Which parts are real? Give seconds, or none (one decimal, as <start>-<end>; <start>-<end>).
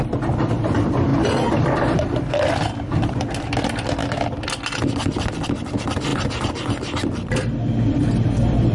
1.1-1.6